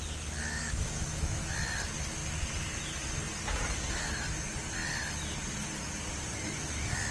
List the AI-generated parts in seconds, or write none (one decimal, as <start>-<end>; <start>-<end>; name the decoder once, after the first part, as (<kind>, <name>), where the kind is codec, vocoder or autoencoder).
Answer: 0.6-1.5 (autoencoder, DAC-VAE)